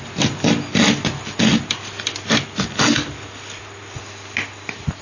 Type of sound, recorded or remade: recorded